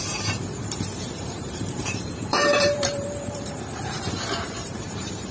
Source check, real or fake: fake